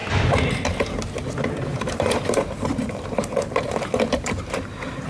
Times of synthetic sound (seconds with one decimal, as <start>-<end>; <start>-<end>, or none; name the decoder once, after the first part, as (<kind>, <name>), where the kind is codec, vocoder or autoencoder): 1.7-5.1 (vocoder, BigVGAN v2)